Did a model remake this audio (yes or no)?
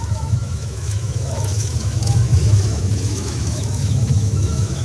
yes